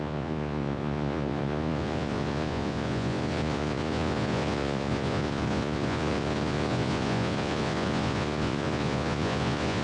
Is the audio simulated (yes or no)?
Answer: yes